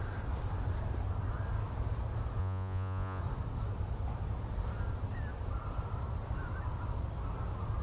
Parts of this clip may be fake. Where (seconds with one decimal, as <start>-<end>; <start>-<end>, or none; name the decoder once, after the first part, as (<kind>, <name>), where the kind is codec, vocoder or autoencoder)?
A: 2.4-3.2 (vocoder, Vocos)